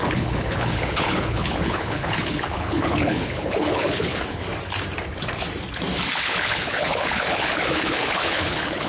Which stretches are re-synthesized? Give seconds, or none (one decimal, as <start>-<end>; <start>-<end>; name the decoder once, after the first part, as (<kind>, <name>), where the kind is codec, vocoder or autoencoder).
0.0-4.4 (codec, HILCodec); 6.2-8.9